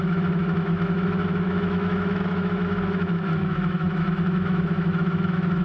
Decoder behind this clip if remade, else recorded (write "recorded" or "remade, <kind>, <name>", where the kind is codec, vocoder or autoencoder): remade, autoencoder, DAC-VAE